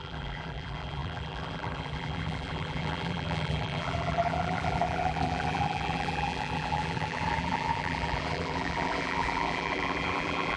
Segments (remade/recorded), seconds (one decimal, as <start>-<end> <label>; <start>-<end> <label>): 0.0-10.6 remade